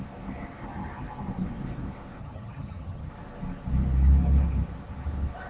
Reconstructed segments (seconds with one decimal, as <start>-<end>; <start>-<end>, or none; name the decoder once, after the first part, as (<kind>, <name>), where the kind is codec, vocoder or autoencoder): 2.2-3.1 (vocoder, HiFi-GAN)